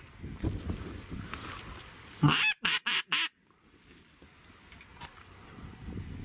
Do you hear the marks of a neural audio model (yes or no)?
no